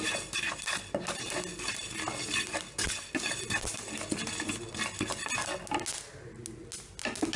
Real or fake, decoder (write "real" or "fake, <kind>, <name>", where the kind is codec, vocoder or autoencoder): real